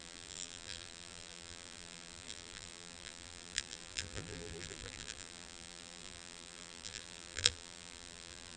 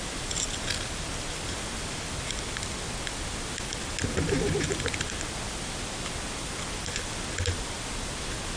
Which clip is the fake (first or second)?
first